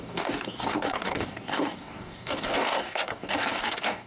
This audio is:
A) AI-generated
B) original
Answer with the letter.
A